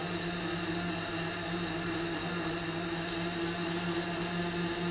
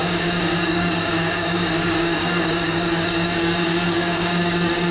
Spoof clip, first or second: second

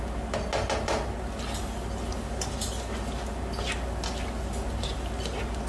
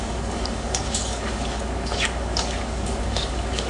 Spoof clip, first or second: second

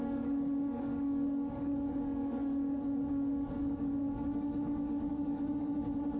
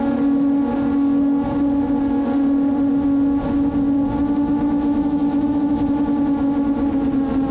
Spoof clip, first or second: first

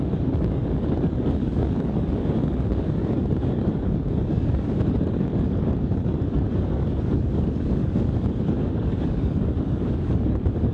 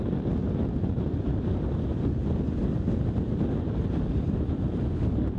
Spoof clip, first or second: first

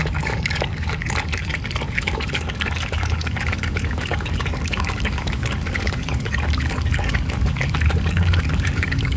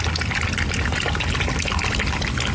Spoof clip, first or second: first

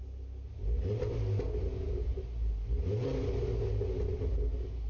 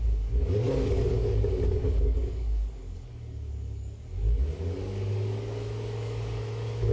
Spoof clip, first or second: second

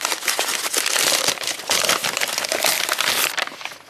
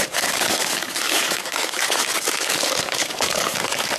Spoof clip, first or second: second